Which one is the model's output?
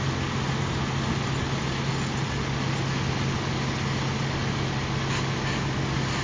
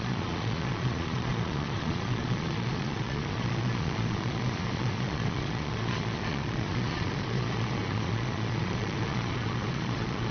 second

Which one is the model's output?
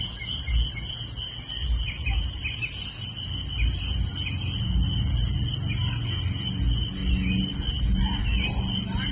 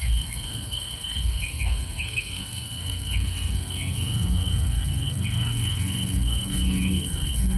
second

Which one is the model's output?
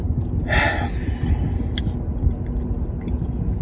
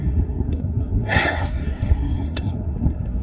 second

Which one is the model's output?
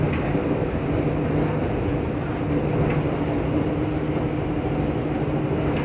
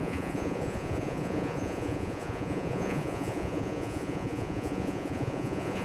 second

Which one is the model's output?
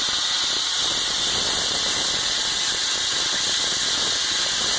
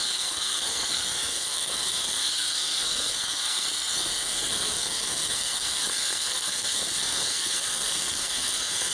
second